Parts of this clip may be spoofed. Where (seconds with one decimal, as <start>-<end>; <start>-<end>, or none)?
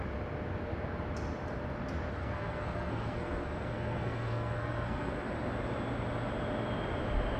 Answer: 2.2-5.1